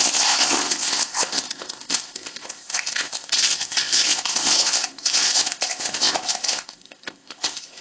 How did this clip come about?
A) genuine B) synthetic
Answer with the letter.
B